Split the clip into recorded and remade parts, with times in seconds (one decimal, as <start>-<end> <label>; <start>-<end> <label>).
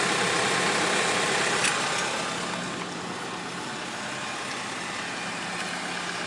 0.0-6.3 recorded